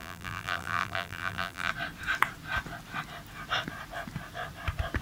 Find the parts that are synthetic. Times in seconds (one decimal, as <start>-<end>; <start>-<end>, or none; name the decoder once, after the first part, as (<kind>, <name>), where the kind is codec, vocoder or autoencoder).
0.0-1.7 (vocoder, BigVGAN v2)